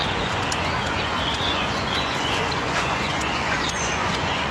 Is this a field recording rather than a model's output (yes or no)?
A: no